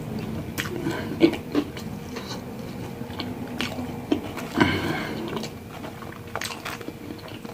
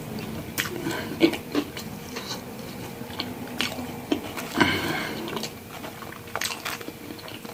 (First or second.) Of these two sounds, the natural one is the first